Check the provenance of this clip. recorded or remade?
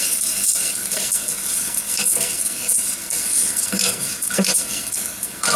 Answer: remade